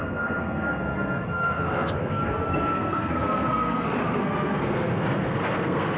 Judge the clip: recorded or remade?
remade